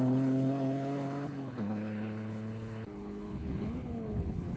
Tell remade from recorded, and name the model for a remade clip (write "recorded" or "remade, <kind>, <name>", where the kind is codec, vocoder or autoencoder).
remade, codec, HILCodec